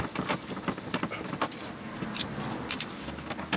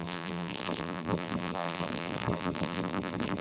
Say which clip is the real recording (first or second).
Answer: first